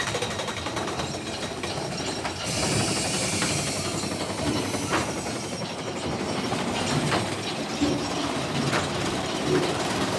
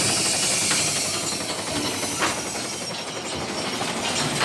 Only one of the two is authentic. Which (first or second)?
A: second